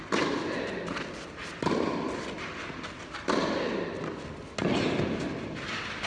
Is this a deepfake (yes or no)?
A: no